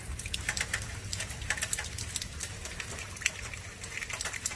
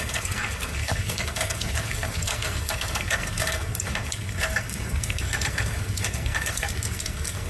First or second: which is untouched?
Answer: first